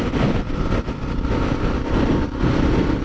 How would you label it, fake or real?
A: real